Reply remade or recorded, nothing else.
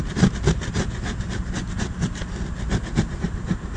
recorded